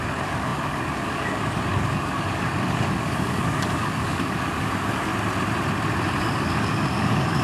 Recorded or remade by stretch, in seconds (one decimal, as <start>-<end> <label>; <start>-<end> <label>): 0.0-5.1 remade; 5.1-6.2 recorded; 6.2-7.4 remade